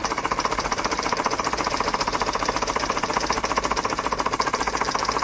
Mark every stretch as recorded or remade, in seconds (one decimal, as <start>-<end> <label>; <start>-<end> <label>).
0.0-3.1 remade; 3.1-5.2 recorded

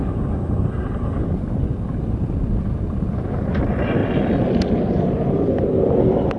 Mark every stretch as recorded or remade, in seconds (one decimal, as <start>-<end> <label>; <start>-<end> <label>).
0.0-3.1 recorded; 3.1-4.0 remade; 4.0-6.0 recorded; 6.0-6.4 remade

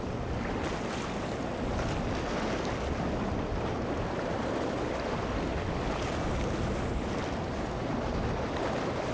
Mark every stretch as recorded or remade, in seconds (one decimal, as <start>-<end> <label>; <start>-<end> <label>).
0.0-9.1 recorded

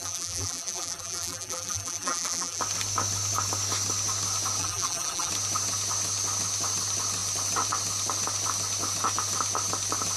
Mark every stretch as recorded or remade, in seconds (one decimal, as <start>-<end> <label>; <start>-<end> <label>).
0.0-2.6 remade; 2.6-4.6 recorded; 4.6-5.3 remade; 5.3-10.2 recorded

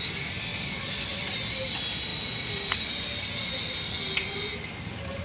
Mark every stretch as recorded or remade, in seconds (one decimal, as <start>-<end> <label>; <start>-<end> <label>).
0.0-0.5 recorded; 0.5-1.3 remade; 1.3-2.1 recorded; 2.1-2.9 remade; 2.9-5.2 recorded

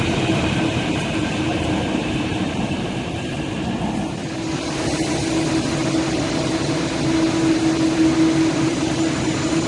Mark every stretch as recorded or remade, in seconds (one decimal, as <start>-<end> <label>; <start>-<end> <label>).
0.0-4.2 remade; 4.2-8.5 recorded; 8.5-9.7 remade

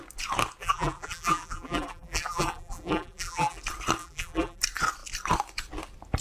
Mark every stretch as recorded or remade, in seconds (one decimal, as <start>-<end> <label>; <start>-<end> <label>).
0.0-0.6 recorded; 0.6-3.6 remade; 3.6-4.0 recorded; 4.0-4.6 remade; 4.6-6.2 recorded

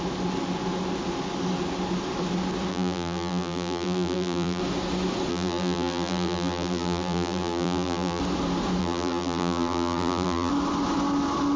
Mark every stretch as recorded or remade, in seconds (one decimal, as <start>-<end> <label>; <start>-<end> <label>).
0.0-2.7 recorded; 2.7-4.6 remade; 4.6-5.3 recorded; 5.3-8.2 remade; 8.2-8.8 recorded; 8.8-10.5 remade; 10.5-11.6 recorded